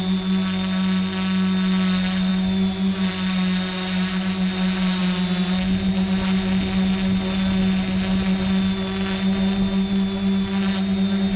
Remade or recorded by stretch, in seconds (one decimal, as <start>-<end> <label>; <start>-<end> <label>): 0.0-11.4 recorded